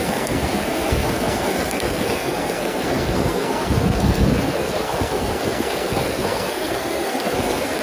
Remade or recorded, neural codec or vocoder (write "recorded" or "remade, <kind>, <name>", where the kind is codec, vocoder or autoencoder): remade, codec, SNAC